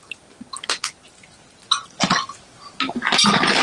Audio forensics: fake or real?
real